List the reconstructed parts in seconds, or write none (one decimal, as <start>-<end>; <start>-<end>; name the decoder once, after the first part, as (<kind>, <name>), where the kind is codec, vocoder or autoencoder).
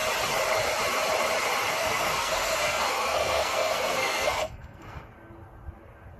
1.7-5.1 (codec, SNAC)